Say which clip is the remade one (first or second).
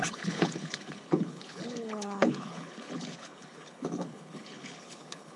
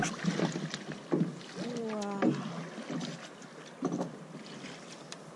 first